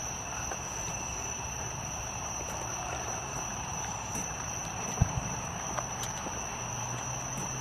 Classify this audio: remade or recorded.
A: remade